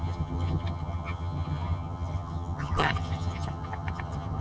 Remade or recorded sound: remade